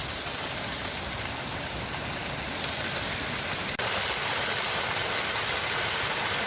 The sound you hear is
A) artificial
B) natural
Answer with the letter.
B